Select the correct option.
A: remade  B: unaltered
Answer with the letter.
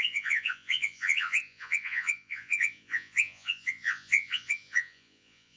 A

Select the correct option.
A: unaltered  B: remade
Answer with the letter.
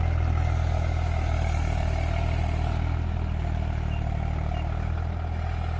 A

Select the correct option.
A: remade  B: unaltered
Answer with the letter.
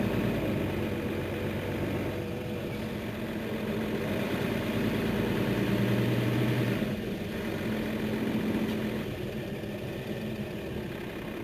B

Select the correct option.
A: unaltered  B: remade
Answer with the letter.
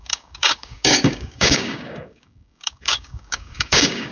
B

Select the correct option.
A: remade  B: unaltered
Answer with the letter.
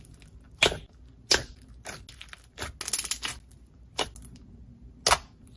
B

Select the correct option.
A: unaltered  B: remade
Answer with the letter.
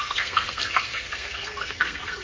B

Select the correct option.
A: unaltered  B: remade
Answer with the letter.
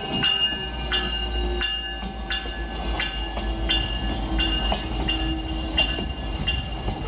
A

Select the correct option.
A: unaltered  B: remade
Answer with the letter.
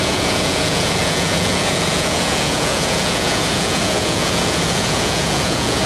B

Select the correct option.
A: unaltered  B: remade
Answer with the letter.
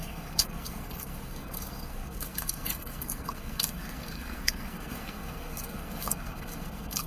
B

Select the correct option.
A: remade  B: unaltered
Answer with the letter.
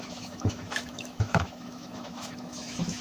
A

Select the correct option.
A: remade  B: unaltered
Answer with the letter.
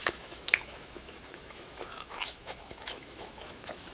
A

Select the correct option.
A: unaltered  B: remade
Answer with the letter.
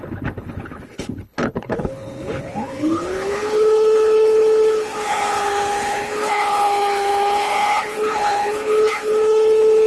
B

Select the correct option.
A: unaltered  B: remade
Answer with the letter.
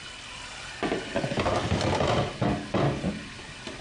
A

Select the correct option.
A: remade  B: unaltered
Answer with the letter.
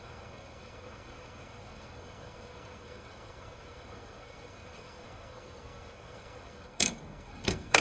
A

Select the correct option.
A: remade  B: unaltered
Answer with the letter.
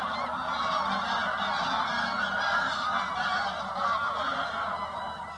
B